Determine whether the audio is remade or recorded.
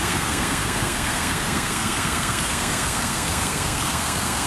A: remade